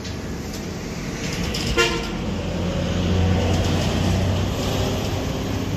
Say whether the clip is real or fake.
real